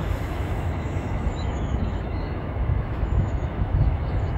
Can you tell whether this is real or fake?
fake